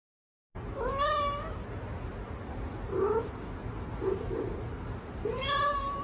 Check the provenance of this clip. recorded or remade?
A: recorded